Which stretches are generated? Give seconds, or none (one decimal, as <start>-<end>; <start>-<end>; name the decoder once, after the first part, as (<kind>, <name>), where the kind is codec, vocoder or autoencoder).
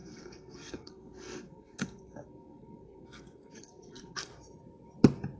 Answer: 0.0-4.3 (codec, SNAC)